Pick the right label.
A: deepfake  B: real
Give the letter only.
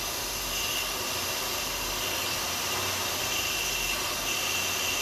B